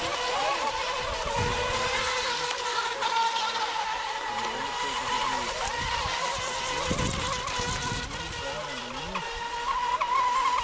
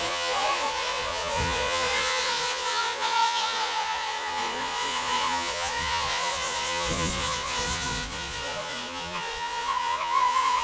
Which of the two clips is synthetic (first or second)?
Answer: second